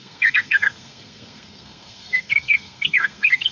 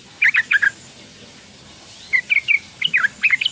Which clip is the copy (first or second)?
first